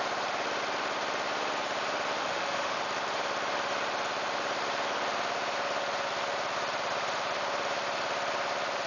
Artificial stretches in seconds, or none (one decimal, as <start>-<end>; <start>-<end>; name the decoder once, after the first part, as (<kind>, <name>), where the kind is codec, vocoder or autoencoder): 2.2-2.8 (autoencoder, DAC-VAE)